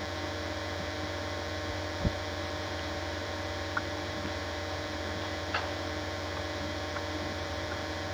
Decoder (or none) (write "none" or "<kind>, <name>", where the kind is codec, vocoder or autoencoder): vocoder, BigVGAN v2